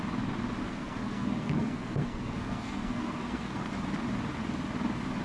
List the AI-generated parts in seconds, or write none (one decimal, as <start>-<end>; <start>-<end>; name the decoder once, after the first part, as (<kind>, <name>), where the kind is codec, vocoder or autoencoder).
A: 0.6-3.7 (codec, SNAC)